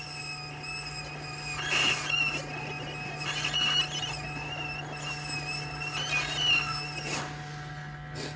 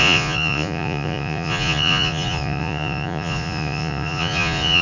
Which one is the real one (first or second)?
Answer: first